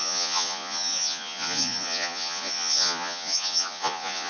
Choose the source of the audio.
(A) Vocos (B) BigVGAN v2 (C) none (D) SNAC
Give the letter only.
A